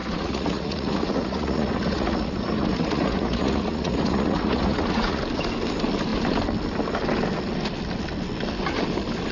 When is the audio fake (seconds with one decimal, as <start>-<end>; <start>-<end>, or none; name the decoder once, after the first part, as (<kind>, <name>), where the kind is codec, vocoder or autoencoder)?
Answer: 0.0-5.2 (vocoder, Vocos)